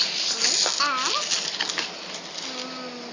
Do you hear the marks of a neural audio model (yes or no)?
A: no